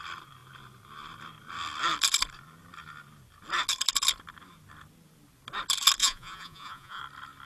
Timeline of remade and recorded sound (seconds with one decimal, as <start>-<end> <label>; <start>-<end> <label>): 0.0-6.0 recorded; 6.0-7.0 remade; 7.0-7.5 recorded